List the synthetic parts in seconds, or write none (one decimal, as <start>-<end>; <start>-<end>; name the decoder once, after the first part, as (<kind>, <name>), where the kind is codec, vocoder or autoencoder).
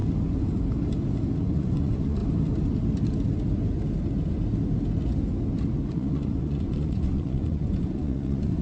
1.4-2.2 (vocoder, Vocos); 5.9-8.6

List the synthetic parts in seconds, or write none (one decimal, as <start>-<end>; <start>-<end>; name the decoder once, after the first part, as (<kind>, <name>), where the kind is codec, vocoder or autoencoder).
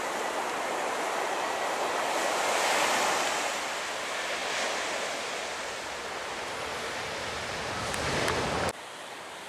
none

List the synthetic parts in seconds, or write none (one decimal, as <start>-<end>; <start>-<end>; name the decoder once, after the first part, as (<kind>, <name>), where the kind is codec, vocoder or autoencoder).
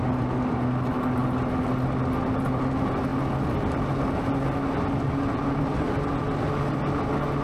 none